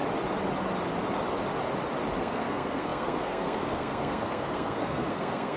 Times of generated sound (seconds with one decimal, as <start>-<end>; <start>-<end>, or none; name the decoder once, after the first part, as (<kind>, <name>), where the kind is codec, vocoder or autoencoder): 2.2-5.6 (codec, SNAC)